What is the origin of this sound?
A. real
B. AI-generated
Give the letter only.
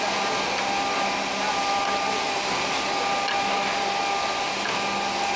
A